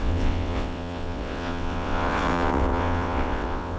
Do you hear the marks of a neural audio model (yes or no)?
yes